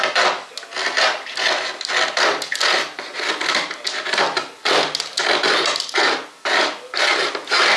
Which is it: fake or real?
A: real